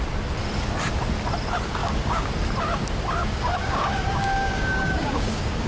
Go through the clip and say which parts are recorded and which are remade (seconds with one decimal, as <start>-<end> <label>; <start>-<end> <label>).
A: 0.0-1.8 recorded; 1.8-2.3 remade; 2.3-3.2 recorded; 3.2-5.7 remade